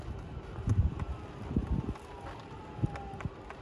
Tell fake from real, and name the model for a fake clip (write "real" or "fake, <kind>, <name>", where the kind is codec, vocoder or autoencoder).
real